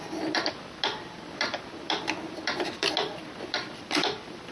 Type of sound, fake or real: real